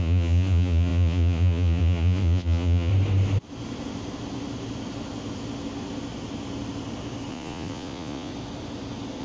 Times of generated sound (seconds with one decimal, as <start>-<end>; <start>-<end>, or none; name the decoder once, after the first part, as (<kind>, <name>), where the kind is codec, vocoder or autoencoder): 0.0-2.9 (vocoder, Vocos); 7.3-8.3